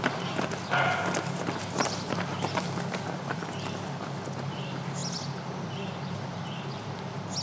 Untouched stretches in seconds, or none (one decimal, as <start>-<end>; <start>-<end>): 0.0-7.4